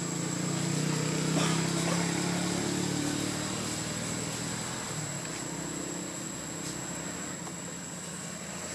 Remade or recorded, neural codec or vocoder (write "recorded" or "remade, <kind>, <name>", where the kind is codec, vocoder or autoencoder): recorded